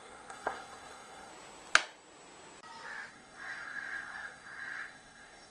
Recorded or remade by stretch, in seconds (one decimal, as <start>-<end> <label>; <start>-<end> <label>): 0.0-1.3 remade; 1.3-3.1 recorded; 3.1-5.5 remade